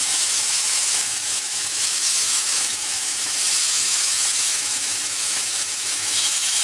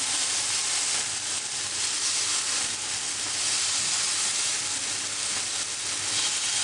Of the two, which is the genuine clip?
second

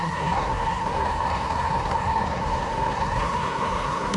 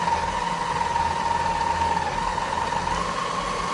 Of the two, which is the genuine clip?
second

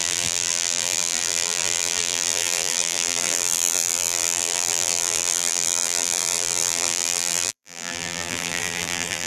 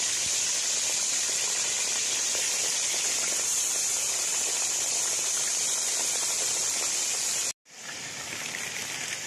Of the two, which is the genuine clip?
second